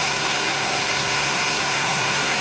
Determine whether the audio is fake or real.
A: fake